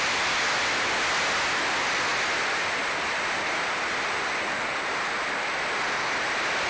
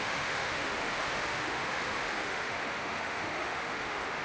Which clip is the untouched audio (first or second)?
first